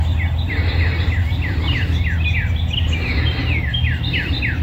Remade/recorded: recorded